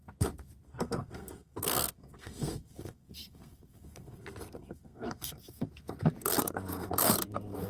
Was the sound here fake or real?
fake